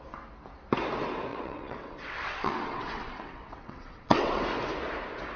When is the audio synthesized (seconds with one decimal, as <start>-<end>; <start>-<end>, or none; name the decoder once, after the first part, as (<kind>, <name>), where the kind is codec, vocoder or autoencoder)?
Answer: 1.3-4.4 (vocoder, WaveNeXt)